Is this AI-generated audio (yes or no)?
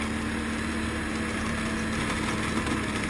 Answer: no